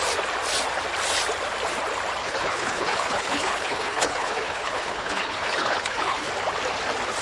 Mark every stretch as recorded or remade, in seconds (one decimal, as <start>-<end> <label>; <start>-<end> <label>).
0.0-2.2 recorded; 2.2-6.3 remade; 6.3-7.2 recorded